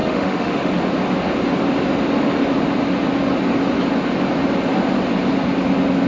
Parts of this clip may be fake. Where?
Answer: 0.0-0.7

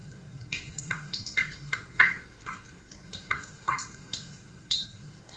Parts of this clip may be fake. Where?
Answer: 0.0-5.4

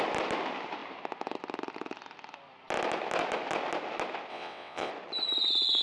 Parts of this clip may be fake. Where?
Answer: 4.3-4.9

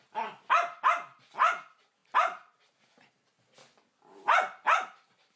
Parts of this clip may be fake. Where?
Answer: none

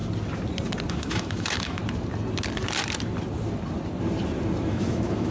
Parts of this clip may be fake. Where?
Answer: 0.9-1.8; 4.7-5.3

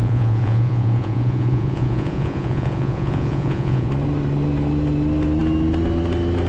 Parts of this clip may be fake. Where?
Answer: 0.0-3.9

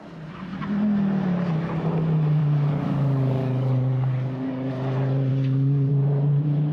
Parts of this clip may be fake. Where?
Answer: 2.4-4.7; 5.3-5.9